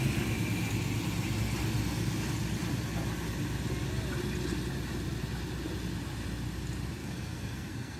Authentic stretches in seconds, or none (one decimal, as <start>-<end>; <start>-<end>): 0.0-7.0